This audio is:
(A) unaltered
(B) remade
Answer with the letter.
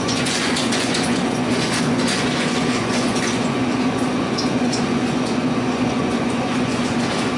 B